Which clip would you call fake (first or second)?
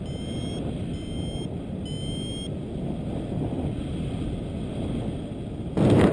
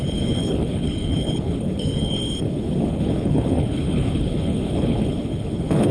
second